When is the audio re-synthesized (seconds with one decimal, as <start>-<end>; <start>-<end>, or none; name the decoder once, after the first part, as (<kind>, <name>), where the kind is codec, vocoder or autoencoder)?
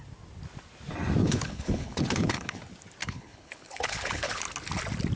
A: 1.2-2.6 (codec, HILCodec); 3.0-4.4